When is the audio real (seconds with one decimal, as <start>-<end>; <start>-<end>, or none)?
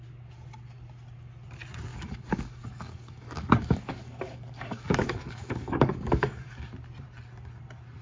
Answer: 0.0-1.9; 6.7-8.0